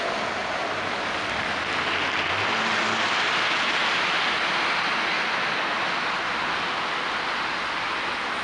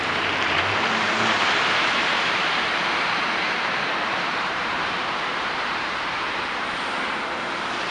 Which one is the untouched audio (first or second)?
first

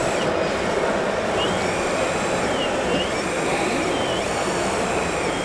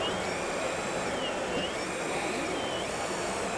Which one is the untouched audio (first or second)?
second